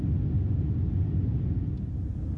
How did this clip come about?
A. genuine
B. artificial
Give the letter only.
A